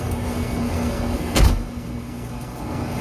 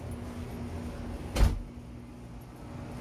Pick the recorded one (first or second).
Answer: second